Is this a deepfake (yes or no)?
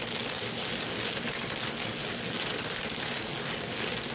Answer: no